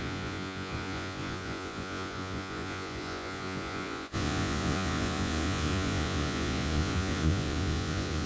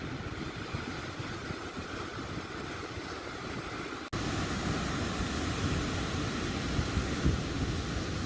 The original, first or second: second